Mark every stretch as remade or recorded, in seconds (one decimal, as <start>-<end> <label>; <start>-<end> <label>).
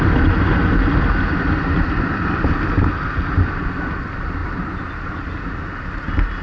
0.0-6.4 recorded